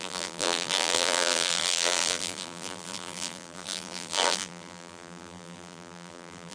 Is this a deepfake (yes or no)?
yes